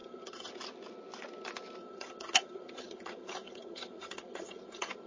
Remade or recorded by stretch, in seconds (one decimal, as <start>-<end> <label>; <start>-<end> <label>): 0.0-0.5 remade; 0.5-1.8 recorded; 1.8-5.1 remade